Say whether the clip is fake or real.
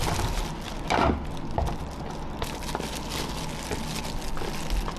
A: real